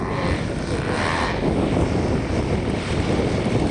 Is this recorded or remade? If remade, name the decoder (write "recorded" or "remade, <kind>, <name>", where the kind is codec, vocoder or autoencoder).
recorded